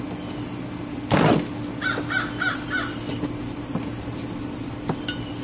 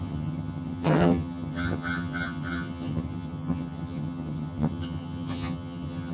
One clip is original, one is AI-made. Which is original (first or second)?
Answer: first